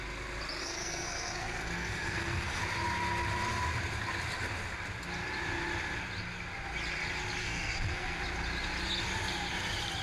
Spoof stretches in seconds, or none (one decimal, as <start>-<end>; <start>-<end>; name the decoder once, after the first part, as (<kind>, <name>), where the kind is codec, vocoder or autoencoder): 0.6-2.6 (codec, SNAC); 7.4-8.2